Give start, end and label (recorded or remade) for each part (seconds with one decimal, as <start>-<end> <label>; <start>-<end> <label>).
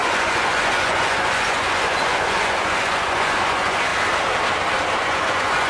0.0-3.9 remade; 3.9-4.9 recorded; 4.9-5.7 remade